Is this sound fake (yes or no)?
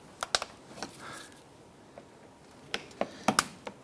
no